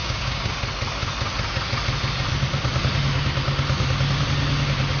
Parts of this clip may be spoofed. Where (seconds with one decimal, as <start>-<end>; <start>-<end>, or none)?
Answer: 0.0-0.5